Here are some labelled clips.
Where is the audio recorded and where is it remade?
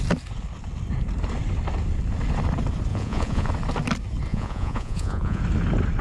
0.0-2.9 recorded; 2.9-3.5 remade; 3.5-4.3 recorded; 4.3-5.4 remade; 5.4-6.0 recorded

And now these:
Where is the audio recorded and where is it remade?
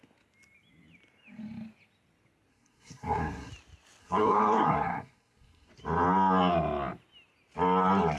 0.0-2.5 recorded; 2.5-3.5 remade; 3.5-4.0 recorded; 4.0-5.7 remade; 5.7-8.2 recorded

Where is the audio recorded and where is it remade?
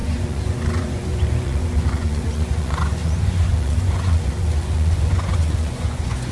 0.0-6.3 remade